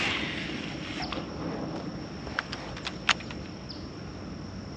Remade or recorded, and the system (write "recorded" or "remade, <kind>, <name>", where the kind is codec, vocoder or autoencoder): recorded